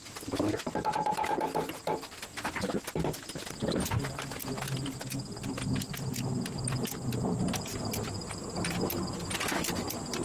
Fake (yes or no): no